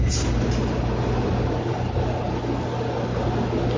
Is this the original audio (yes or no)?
yes